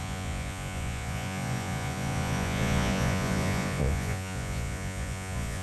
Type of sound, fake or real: fake